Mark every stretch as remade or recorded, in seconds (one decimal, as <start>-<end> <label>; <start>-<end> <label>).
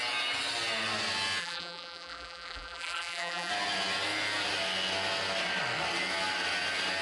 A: 0.0-1.4 recorded; 1.4-3.5 remade; 3.5-7.0 recorded